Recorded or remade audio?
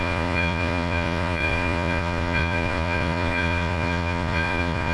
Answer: remade